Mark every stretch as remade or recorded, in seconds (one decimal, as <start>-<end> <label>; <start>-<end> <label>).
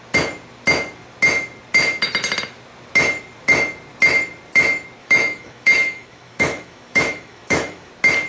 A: 0.0-5.0 recorded; 5.0-7.9 remade; 7.9-8.3 recorded